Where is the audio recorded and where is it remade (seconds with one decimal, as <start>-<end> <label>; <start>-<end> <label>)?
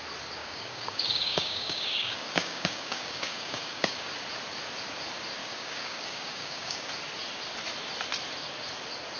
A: 0.0-0.4 recorded; 0.4-4.1 remade; 4.1-5.4 recorded; 5.4-6.9 remade; 6.9-9.2 recorded